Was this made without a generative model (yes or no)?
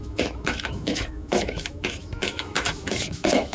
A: no